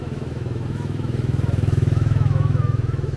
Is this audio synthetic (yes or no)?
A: yes